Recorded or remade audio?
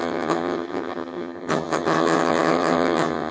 remade